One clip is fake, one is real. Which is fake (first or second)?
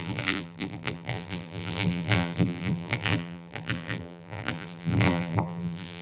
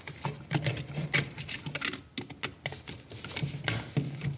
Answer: first